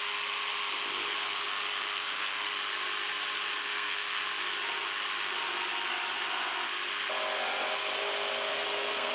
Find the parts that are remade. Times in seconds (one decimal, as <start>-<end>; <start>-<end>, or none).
1.2-2.5; 3.6-4.2; 8.5-9.1